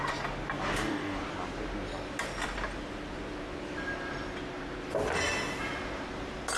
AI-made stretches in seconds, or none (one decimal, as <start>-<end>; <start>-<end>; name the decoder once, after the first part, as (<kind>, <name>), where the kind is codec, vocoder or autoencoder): 0.7-1.2 (codec, DAC)